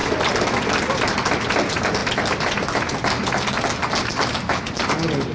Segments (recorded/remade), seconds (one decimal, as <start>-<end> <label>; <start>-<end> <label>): 0.0-5.3 recorded

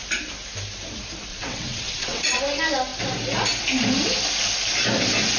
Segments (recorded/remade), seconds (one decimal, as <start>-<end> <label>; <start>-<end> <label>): 0.0-1.3 recorded; 1.3-2.4 remade; 2.4-5.4 recorded

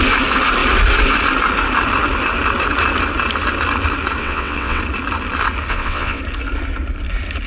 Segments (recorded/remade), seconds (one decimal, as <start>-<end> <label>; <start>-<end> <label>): 0.0-4.2 recorded; 4.2-4.8 remade; 4.8-5.7 recorded; 5.7-6.2 remade; 6.2-7.5 recorded